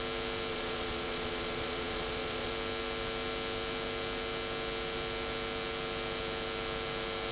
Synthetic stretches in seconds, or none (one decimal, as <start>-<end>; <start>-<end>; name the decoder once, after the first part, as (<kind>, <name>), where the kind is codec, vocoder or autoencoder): 0.5-2.5 (vocoder, Vocos)